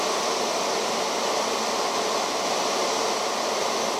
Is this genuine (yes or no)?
yes